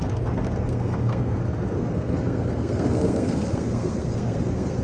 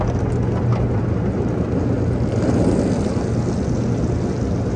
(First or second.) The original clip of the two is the second